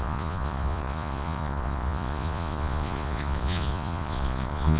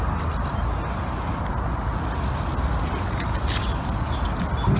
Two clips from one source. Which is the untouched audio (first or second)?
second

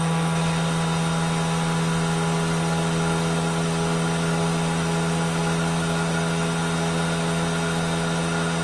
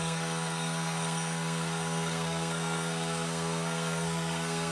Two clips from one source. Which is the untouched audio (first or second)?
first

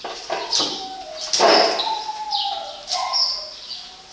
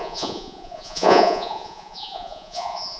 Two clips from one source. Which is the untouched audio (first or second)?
first